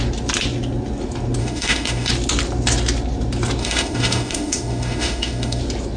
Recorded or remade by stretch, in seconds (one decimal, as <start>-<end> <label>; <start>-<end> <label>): 0.0-1.4 recorded; 1.4-2.1 remade; 2.1-3.6 recorded; 3.6-5.6 remade; 5.6-6.0 recorded